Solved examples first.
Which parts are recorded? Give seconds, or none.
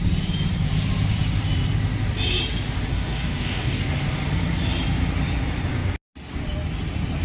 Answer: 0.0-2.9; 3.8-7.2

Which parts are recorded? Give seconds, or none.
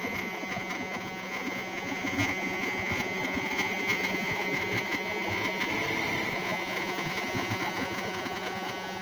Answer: 5.7-6.3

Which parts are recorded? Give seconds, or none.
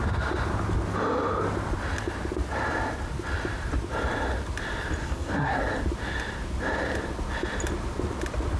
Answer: 0.0-5.0; 5.6-8.6